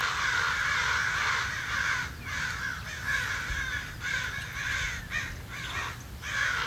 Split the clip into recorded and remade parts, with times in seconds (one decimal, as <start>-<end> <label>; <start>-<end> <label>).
0.0-6.7 recorded